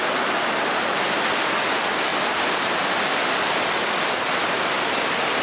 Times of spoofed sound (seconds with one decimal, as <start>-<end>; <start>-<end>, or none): none